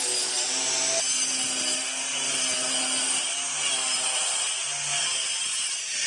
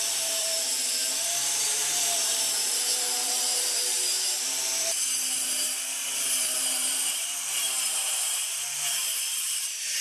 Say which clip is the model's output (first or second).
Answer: second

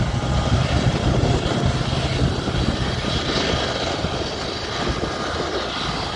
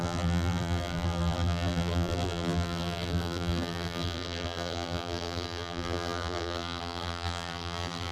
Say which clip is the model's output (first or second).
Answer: second